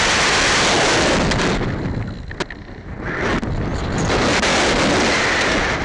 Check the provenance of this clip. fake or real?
real